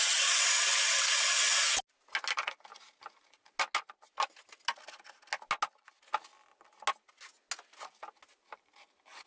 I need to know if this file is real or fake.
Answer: real